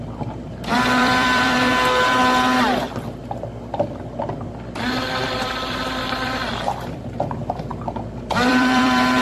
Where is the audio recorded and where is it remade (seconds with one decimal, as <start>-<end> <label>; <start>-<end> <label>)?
0.0-0.7 recorded; 0.7-1.7 remade; 1.7-5.2 recorded; 5.2-7.1 remade; 7.1-7.7 recorded; 7.7-9.2 remade

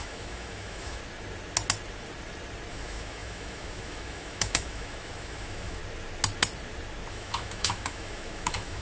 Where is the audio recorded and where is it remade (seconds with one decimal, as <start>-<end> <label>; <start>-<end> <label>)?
0.0-1.0 remade; 1.0-2.7 recorded; 2.7-5.8 remade; 5.8-7.1 recorded; 7.1-8.8 remade

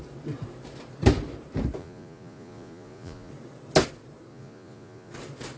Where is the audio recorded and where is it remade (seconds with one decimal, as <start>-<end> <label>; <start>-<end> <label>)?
0.0-1.8 recorded; 1.8-3.3 remade; 3.3-4.3 recorded; 4.3-5.1 remade; 5.1-5.6 recorded

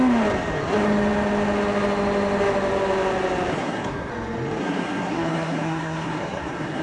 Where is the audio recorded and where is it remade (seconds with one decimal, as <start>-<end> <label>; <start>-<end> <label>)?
0.0-3.5 recorded; 3.5-4.1 remade; 4.1-4.6 recorded; 4.6-6.8 remade

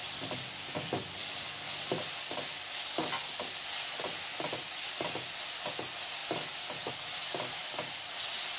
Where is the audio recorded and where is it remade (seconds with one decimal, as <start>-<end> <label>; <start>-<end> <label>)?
0.0-8.6 recorded